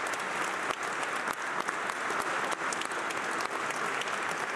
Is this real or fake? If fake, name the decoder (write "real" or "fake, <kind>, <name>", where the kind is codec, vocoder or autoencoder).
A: real